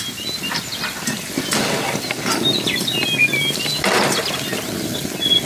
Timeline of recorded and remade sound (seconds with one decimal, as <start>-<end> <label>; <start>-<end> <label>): 0.0-5.5 recorded